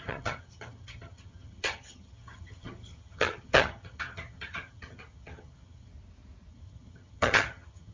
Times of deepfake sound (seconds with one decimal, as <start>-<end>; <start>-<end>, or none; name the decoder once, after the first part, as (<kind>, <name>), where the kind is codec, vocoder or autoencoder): 0.0-5.9 (vocoder, HiFi-GAN); 6.5-7.9